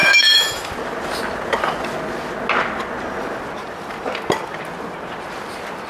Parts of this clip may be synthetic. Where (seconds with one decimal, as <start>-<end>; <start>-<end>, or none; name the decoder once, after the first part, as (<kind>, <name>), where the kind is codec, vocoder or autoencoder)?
0.0-0.7 (autoencoder, DAC-VAE)